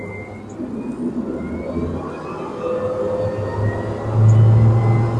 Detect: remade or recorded recorded